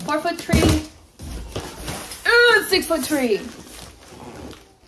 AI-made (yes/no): no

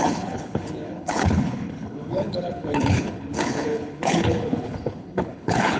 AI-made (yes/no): yes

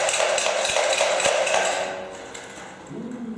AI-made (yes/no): no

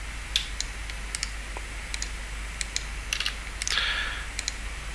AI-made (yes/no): no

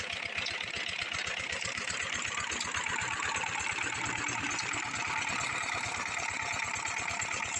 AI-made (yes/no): no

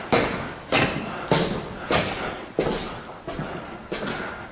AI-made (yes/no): no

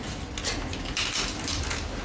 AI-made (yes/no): no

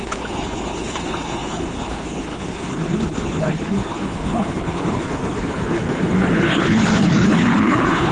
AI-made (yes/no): yes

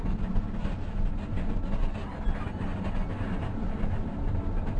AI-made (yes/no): no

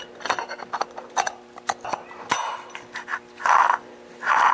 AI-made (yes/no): no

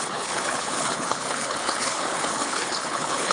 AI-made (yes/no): yes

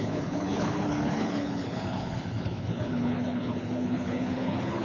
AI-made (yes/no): yes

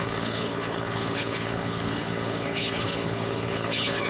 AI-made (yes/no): yes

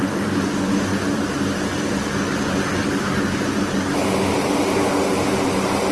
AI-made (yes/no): no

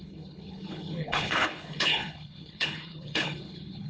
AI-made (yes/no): yes